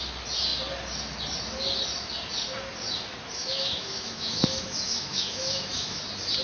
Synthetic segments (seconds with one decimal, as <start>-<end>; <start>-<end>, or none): 3.4-6.0